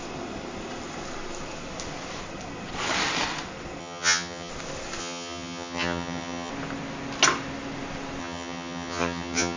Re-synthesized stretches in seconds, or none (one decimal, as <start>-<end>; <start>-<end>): 3.8-4.5; 5.0-6.5; 8.2-9.6